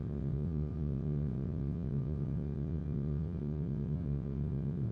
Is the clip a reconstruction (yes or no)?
yes